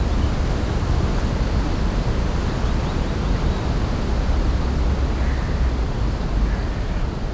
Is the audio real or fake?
real